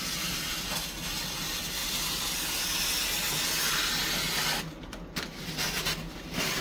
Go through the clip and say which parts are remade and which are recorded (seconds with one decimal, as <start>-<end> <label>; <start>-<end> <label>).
0.0-6.6 recorded

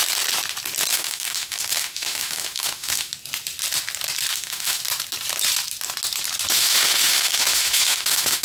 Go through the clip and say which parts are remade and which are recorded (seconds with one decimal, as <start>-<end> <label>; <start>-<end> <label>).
0.0-0.9 recorded; 0.9-3.1 remade; 3.1-4.3 recorded; 4.3-4.8 remade; 4.8-6.5 recorded; 6.5-8.4 remade

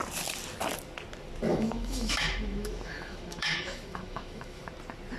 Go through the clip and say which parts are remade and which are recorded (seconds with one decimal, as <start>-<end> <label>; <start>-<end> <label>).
0.0-1.5 recorded; 1.5-4.6 remade; 4.6-5.2 recorded

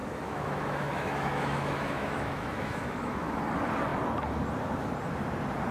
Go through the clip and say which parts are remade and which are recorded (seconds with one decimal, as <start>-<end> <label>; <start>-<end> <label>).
0.0-3.4 remade; 3.4-5.7 recorded

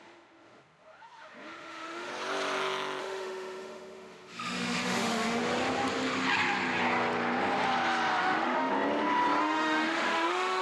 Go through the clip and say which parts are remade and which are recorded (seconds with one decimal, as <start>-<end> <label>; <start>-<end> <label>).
0.0-2.1 remade; 2.1-3.0 recorded; 3.0-5.4 remade; 5.4-8.2 recorded; 8.2-8.7 remade; 8.7-9.4 recorded; 9.4-10.6 remade

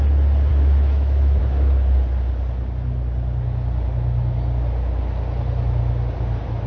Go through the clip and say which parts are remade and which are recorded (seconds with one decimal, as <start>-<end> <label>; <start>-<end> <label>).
0.0-0.5 recorded; 0.5-1.4 remade; 1.4-6.7 recorded